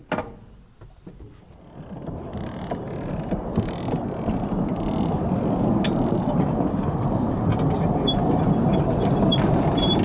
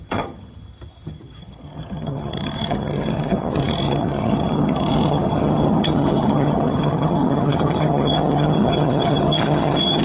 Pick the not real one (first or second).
second